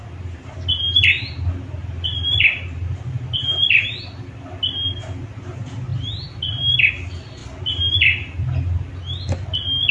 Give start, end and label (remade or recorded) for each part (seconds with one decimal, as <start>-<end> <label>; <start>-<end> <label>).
0.0-1.8 recorded; 1.8-5.0 remade; 5.0-7.4 recorded; 7.4-8.9 remade; 8.9-9.9 recorded